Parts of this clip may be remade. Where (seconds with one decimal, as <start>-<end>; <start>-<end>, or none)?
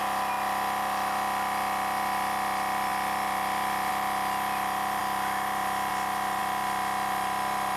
5.0-5.9